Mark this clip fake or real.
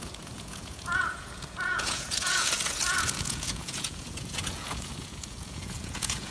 fake